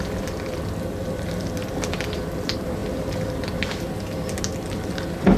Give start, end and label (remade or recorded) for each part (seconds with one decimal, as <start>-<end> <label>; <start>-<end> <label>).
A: 0.0-5.4 recorded